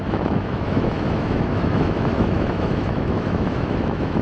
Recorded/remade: remade